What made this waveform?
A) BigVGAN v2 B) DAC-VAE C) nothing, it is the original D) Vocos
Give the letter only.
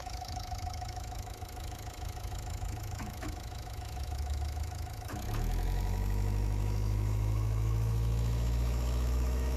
B